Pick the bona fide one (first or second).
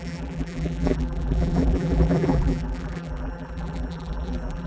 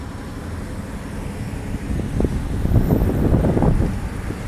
second